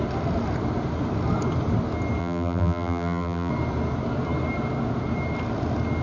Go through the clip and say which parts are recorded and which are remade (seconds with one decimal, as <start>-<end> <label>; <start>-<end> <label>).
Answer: 0.0-2.2 recorded; 2.2-3.5 remade; 3.5-6.0 recorded